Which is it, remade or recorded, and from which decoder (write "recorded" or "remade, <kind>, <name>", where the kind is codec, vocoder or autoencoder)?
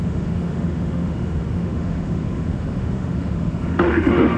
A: remade, autoencoder, DAC-VAE